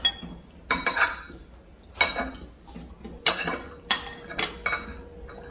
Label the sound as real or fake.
real